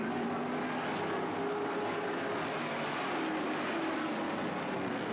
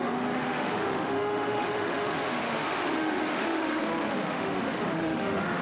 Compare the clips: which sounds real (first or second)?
first